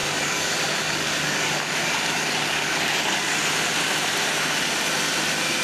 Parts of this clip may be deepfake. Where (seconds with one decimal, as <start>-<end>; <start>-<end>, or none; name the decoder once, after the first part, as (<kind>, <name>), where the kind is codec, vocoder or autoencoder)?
0.0-3.4 (codec, DAC)